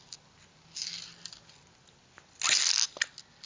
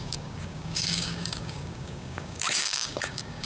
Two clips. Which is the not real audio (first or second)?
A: second